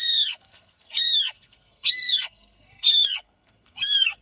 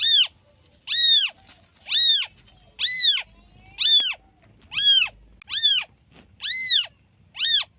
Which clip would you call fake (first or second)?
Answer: first